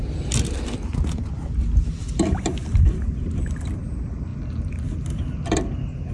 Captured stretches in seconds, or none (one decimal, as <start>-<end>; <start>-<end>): 0.0-6.1